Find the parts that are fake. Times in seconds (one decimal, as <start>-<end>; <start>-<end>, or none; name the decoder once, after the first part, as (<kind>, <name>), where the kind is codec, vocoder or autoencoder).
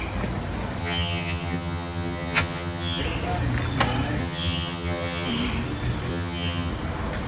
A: 0.8-3.0 (vocoder, HiFi-GAN); 4.2-5.3; 6.1-6.7